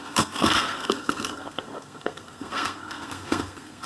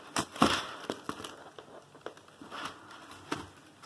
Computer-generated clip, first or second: first